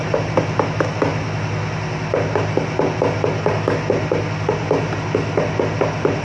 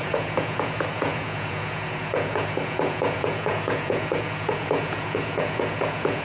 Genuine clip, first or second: first